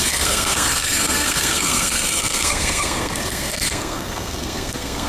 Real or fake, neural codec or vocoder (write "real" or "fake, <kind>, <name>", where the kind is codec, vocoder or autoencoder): fake, codec, SNAC